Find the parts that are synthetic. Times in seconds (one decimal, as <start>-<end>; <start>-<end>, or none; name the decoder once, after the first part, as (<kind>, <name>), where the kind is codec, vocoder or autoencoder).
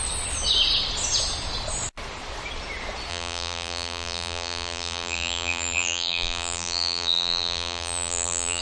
3.1-8.6 (vocoder, BigVGAN v2)